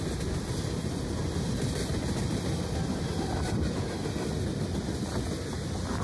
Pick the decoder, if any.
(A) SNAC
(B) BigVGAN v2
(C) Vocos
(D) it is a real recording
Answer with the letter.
D